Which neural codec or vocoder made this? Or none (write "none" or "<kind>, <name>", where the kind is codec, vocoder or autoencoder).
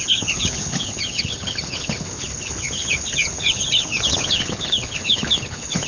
codec, HILCodec